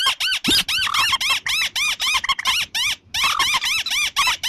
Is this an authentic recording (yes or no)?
yes